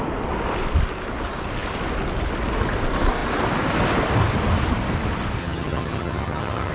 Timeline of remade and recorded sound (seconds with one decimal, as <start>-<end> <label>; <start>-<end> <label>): 0.0-5.4 recorded; 5.4-6.7 remade